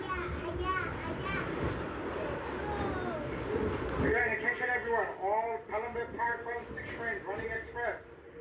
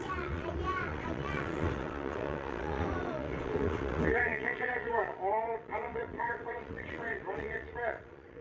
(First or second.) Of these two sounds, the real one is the first